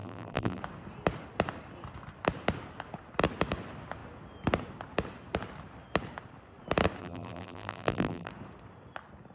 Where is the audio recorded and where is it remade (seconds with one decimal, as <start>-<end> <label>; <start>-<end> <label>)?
0.0-0.6 remade; 0.6-7.0 recorded; 7.0-8.3 remade; 8.3-9.3 recorded